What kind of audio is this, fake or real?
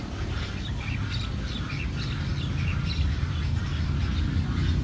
real